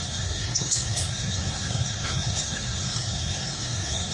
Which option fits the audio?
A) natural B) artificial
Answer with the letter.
B